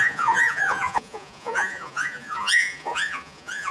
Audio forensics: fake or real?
fake